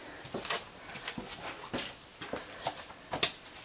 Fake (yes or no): no